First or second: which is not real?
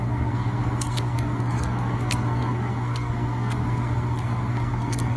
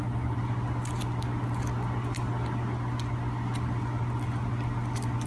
first